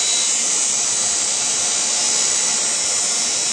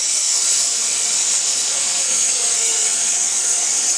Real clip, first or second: first